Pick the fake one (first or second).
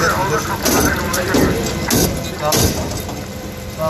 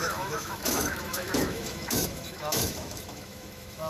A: second